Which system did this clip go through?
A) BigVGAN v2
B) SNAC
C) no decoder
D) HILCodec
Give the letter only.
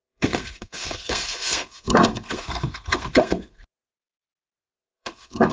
B